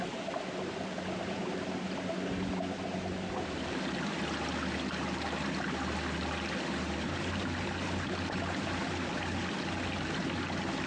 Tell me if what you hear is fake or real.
real